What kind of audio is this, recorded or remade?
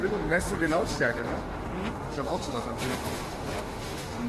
remade